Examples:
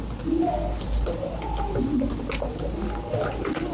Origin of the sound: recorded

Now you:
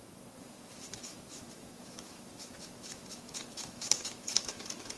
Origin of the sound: remade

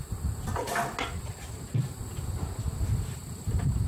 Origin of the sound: recorded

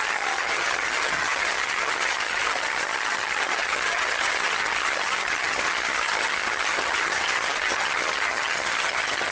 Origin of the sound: remade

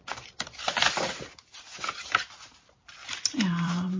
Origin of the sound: remade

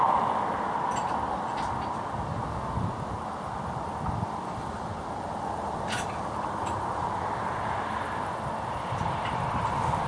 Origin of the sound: recorded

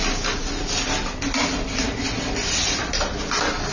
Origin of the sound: recorded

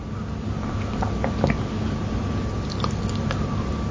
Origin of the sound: recorded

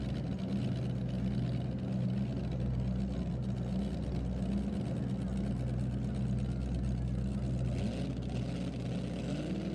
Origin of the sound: recorded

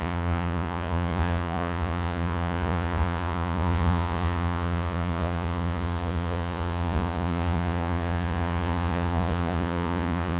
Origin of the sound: remade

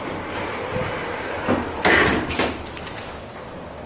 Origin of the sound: recorded